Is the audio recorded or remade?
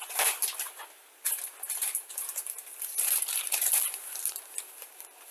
remade